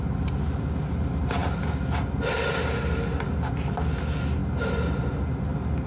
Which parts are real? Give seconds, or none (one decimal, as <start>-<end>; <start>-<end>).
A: 0.0-5.9

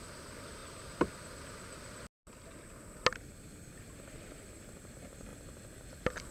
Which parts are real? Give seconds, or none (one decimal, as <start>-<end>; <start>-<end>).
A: 0.0-6.3

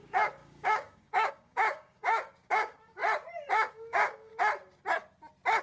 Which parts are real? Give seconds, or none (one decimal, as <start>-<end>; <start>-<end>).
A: 3.0-3.7; 4.3-5.6

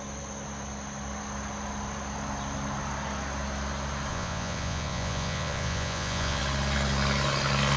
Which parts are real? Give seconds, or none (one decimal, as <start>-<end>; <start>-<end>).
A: 0.0-4.1; 6.4-7.8

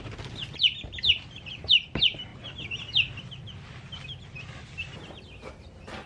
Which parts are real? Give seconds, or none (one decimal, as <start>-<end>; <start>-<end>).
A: 0.0-6.1